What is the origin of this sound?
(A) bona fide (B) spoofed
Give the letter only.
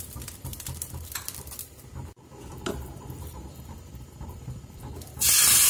B